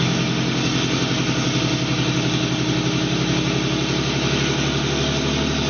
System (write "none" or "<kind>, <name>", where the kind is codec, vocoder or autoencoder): none